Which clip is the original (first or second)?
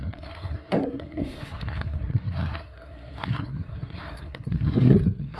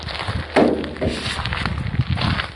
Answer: second